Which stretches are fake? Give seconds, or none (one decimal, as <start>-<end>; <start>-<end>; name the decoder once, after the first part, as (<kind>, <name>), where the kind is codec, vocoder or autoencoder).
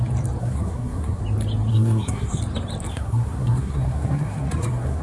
0.4-1.2 (codec, SNAC); 1.7-2.4; 2.9-5.0